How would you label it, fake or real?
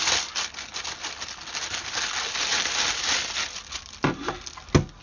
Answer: real